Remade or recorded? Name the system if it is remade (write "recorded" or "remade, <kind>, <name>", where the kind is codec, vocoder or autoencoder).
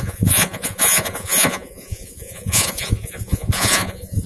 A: remade, vocoder, Vocos